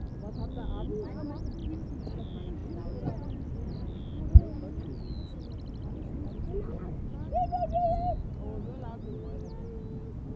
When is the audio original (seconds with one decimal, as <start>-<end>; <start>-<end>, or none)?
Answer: 0.0-10.4